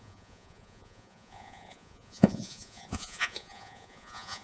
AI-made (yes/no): yes